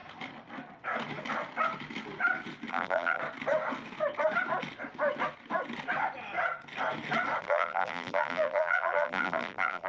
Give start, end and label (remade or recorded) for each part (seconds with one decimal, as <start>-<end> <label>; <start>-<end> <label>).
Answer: 0.0-2.7 recorded; 2.7-3.2 remade; 3.2-7.4 recorded; 7.4-9.9 remade